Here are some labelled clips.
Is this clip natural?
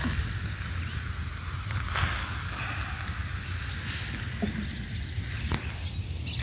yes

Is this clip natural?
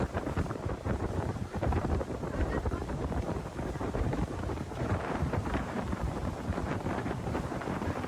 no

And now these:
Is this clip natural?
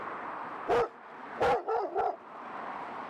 yes